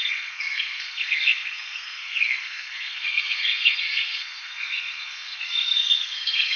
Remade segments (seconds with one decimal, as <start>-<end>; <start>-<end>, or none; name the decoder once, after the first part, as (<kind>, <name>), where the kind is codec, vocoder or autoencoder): 0.0-6.6 (codec, SNAC)